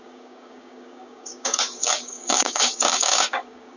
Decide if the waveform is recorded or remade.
remade